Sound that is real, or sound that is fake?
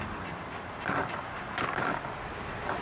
real